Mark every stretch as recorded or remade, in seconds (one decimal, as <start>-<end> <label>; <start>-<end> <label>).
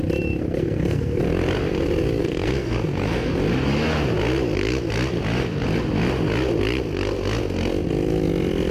0.0-0.4 recorded; 0.4-1.2 remade; 1.2-2.2 recorded; 2.2-3.3 remade; 3.3-8.7 recorded